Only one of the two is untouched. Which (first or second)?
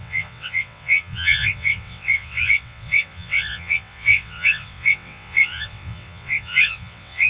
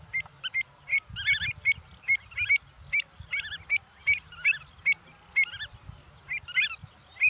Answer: second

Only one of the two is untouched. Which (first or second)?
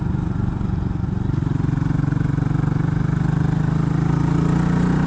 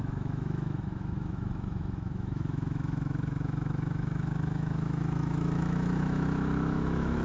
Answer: first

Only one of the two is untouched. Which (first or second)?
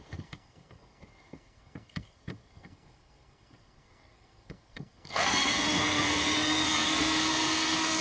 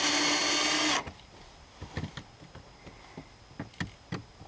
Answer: second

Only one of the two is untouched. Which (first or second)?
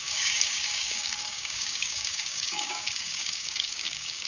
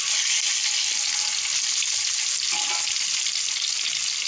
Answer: second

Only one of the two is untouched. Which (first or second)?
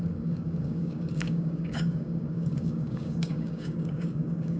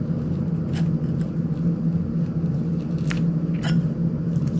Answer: second